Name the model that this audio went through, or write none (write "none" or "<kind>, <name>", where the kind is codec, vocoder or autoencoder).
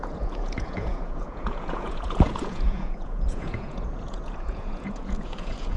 vocoder, Vocos